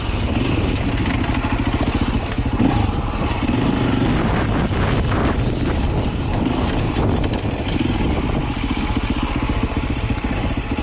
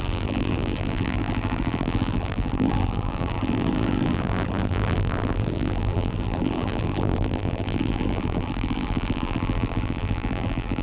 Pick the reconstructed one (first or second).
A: second